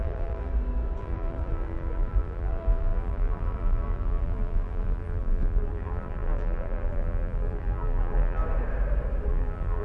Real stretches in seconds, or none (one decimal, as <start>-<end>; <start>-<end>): 0.5-1.0; 8.4-9.3